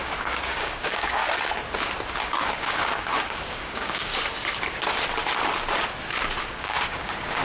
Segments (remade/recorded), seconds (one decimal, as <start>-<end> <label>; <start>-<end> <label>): 0.0-1.2 remade; 1.2-2.2 recorded; 2.2-4.1 remade; 4.1-6.4 recorded; 6.4-7.4 remade